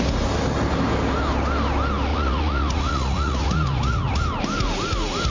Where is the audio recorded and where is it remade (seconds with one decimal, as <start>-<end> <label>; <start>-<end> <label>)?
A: 0.0-2.1 recorded; 2.1-4.2 remade; 4.2-5.3 recorded